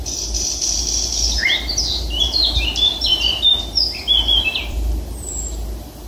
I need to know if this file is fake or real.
fake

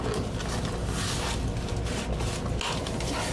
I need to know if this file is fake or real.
real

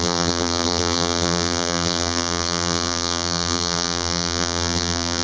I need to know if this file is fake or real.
fake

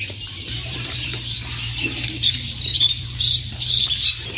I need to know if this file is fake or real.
fake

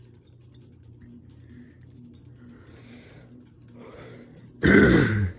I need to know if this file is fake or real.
fake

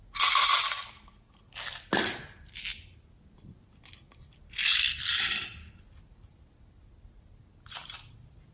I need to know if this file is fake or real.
real